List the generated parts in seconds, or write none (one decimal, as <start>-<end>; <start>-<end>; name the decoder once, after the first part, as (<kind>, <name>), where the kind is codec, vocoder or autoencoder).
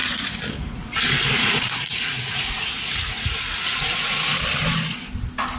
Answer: 0.0-0.8 (vocoder, Vocos); 1.4-4.4